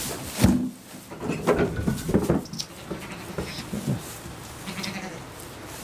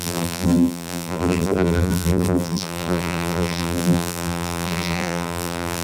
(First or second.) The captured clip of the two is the first